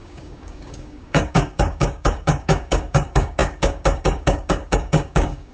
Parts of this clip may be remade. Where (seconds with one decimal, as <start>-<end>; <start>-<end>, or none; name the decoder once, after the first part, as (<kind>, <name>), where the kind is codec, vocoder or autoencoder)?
0.0-5.5 (codec, DAC)